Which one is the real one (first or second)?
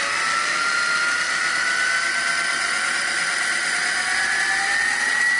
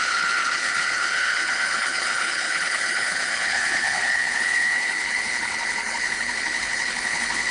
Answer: first